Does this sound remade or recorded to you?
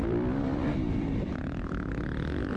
remade